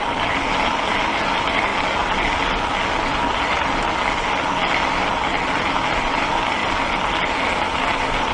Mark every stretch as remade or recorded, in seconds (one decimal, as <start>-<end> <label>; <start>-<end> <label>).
0.0-1.7 remade; 1.7-5.9 recorded; 5.9-6.6 remade; 6.6-7.8 recorded; 7.8-8.3 remade